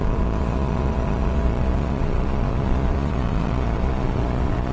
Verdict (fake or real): fake